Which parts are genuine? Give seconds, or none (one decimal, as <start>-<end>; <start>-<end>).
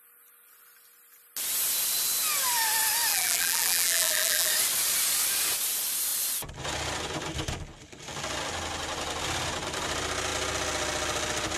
0.0-3.1; 4.5-11.6